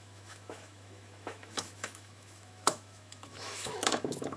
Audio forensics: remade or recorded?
remade